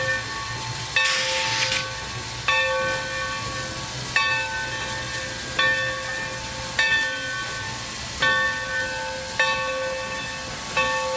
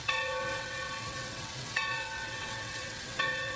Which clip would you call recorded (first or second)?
first